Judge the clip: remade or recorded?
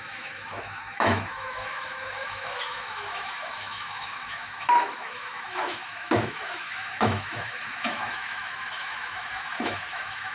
remade